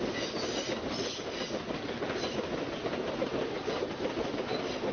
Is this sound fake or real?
real